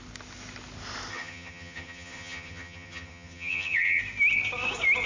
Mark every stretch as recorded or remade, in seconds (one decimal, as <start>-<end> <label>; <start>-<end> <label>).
0.0-1.1 recorded; 1.1-4.0 remade; 4.0-5.1 recorded